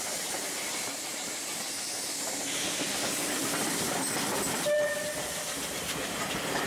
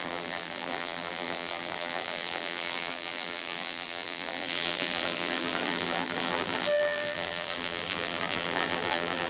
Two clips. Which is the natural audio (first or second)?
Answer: first